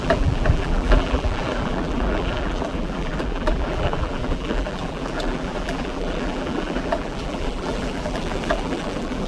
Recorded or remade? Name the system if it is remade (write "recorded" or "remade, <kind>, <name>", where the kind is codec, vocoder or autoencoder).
remade, vocoder, BigVGAN v2